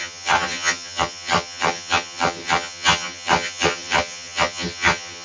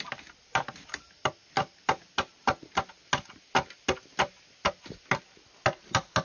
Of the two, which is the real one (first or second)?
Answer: second